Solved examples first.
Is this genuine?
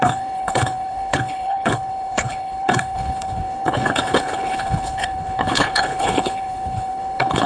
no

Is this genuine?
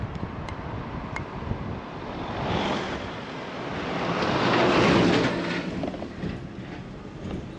yes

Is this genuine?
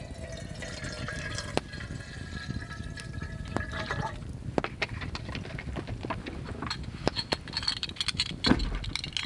yes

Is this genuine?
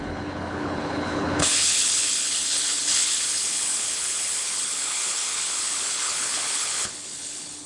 no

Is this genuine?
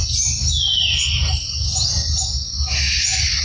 yes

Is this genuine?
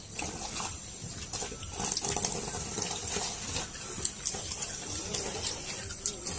yes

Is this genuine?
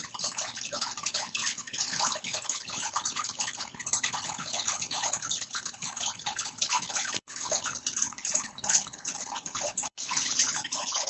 no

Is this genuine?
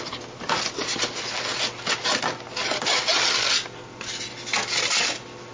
yes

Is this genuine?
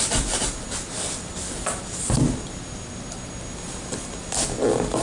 yes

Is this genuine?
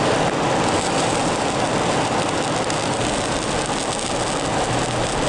yes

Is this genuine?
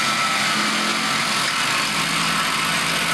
yes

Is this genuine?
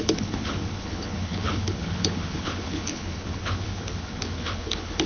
no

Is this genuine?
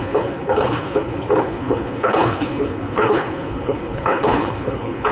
no